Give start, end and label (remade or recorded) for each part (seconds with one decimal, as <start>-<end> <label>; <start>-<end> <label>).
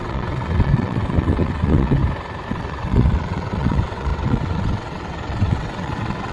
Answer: 0.0-2.0 remade; 2.0-2.5 recorded; 2.5-6.3 remade